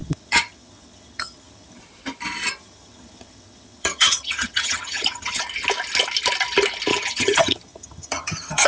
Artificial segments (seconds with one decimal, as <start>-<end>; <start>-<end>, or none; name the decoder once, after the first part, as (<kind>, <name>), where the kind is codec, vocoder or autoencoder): 0.0-1.8 (vocoder, HiFi-GAN); 2.6-5.4; 6.9-8.7

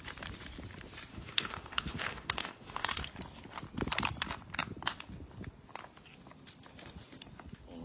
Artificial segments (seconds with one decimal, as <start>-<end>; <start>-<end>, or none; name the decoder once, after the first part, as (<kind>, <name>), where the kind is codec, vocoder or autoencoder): 1.1-3.0 (autoencoder, DAC-VAE)

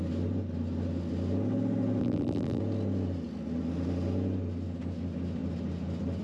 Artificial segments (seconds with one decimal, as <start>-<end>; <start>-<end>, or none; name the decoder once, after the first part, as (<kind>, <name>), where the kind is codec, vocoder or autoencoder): 2.0-2.6 (vocoder, BigVGAN v2)

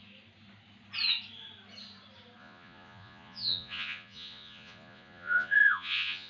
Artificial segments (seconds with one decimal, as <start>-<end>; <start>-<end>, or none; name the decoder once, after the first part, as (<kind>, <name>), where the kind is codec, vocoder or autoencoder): 2.4-6.3 (vocoder, Vocos)

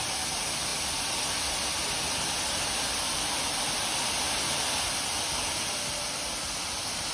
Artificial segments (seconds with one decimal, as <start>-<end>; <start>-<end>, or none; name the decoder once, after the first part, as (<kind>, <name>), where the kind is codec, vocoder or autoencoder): none

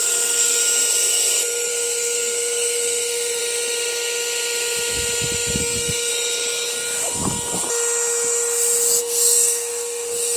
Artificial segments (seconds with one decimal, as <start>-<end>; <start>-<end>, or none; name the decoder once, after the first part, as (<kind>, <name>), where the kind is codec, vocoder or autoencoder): 0.0-0.6 (codec, SNAC); 1.7-3.4; 5.6-6.1; 9.0-10.4

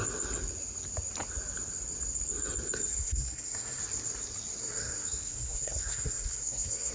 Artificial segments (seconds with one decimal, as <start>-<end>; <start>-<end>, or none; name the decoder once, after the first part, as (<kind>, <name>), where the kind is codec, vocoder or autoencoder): 3.0-3.8 (codec, SNAC); 4.6-6.9